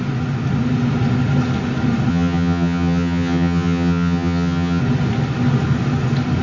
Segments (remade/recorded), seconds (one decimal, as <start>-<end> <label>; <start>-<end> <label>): 0.0-2.1 recorded; 2.1-4.8 remade; 4.8-6.4 recorded